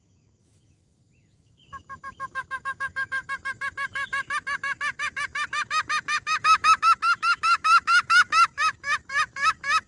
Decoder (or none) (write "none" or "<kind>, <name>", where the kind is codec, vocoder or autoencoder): autoencoder, DAC-VAE